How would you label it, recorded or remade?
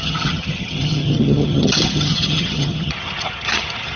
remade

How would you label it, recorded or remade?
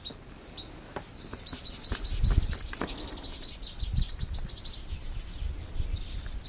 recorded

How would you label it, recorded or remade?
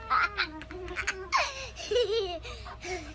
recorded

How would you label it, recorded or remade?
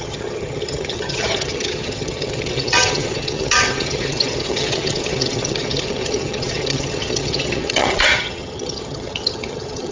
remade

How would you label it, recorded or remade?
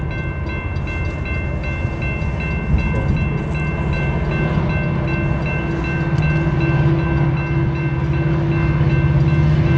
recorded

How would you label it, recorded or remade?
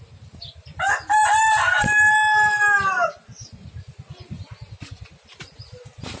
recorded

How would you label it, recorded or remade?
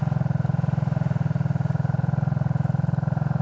recorded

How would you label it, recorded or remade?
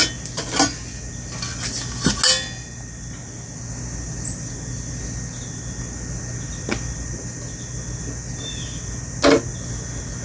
recorded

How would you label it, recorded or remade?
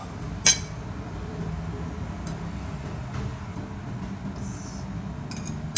recorded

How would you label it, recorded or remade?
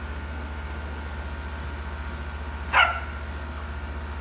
recorded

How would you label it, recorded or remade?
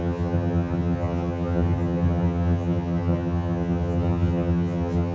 remade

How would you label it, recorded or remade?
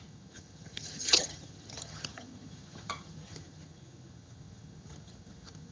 remade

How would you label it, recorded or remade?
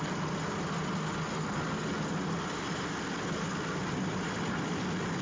recorded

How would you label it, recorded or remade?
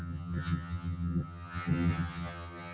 remade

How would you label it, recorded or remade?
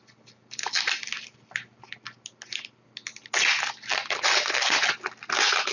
recorded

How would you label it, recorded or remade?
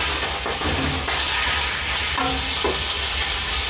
recorded